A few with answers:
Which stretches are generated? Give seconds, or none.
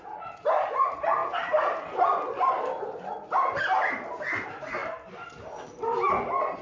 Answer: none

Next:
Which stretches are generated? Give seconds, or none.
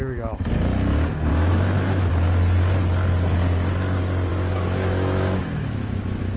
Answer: 1.3-2.1 (autoencoder, DAC-VAE); 4.3-6.4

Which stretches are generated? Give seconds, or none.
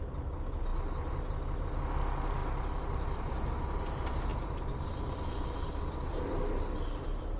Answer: 2.4-3.5 (vocoder, BigVGAN v2); 4.3-6.3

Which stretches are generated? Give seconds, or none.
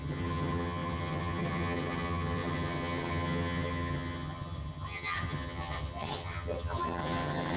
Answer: 0.0-7.6 (vocoder, HiFi-GAN)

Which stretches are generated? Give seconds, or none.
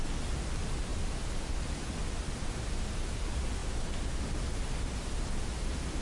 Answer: none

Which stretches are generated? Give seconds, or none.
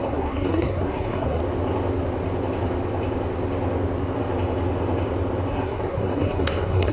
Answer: 0.0-1.4 (codec, SNAC); 5.5-6.9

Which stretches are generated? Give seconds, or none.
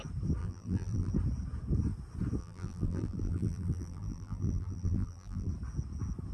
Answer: 0.4-1.1 (vocoder, BigVGAN v2); 2.4-5.5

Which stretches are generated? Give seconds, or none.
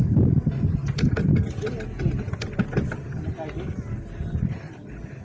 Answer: 0.0-0.8 (vocoder, BigVGAN v2); 3.9-5.2